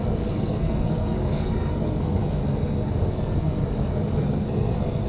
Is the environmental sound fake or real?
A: fake